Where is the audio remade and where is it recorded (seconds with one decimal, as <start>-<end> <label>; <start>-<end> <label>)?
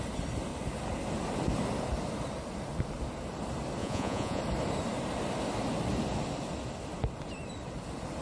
0.0-3.8 recorded; 3.8-4.4 remade; 4.4-8.2 recorded